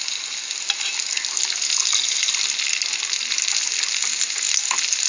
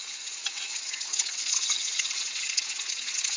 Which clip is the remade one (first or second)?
second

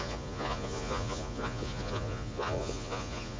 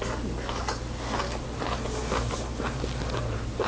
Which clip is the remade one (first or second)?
first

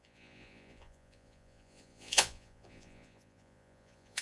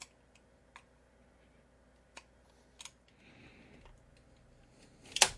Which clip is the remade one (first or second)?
first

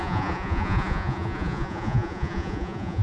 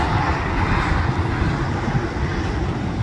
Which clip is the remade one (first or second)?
first